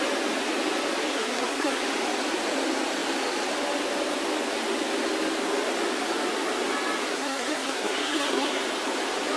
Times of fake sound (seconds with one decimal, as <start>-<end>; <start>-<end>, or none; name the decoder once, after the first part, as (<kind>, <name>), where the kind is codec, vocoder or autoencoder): 1.1-1.8 (codec, SNAC); 7.1-8.6